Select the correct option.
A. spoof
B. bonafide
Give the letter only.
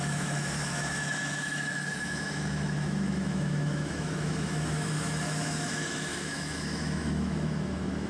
A